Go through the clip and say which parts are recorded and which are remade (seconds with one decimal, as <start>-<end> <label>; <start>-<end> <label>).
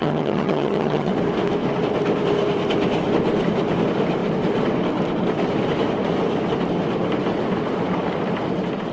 0.0-1.1 remade; 1.1-8.9 recorded